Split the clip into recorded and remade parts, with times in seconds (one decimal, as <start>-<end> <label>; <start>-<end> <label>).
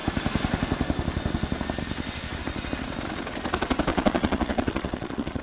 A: 0.0-3.9 recorded; 3.9-5.4 remade